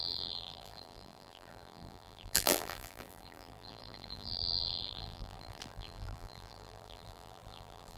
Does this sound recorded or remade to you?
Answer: remade